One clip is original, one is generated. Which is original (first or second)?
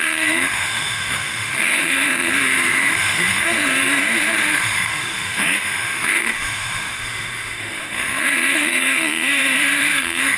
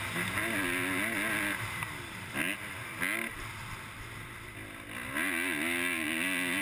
second